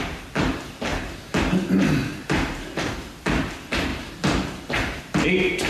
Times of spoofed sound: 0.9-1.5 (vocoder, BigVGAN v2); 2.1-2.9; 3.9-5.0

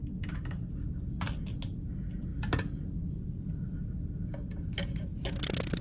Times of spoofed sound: none

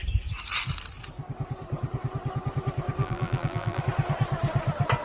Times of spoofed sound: 3.0-3.8 (vocoder, BigVGAN v2)

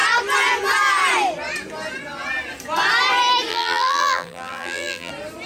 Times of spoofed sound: 3.5-5.1 (vocoder, BigVGAN v2)